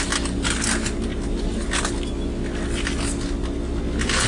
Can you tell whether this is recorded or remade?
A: recorded